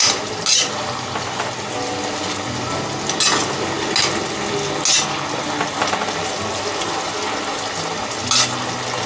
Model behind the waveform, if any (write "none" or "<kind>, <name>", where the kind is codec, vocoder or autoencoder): none